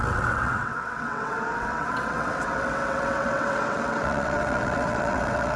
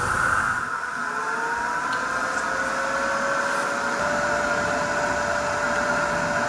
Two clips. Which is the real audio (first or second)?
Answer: second